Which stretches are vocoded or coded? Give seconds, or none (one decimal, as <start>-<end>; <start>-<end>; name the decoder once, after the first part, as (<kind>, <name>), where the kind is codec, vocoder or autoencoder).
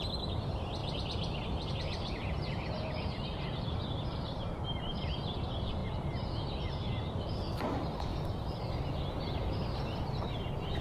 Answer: 0.0-0.8 (vocoder, BigVGAN v2); 1.7-5.8; 6.6-8.1; 10.0-10.8